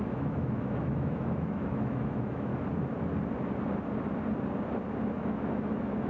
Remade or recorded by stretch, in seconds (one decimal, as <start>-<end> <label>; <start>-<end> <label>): 0.0-2.5 remade; 2.5-5.1 recorded; 5.1-6.1 remade